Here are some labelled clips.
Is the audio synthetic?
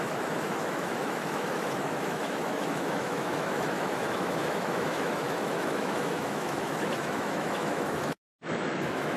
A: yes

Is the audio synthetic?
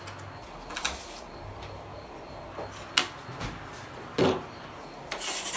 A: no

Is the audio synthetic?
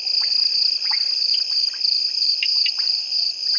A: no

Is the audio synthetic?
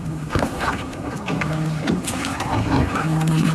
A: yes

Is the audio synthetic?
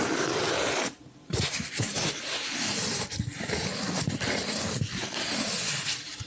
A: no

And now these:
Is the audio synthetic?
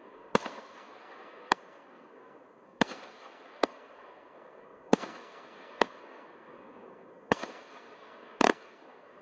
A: yes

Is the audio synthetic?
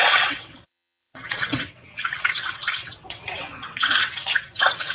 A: yes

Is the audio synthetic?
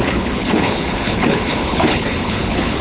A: yes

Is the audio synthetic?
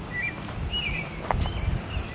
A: no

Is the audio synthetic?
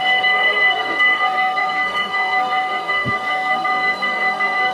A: yes